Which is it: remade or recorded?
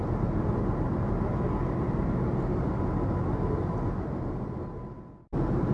recorded